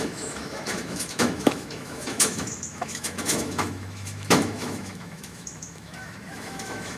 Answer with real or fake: fake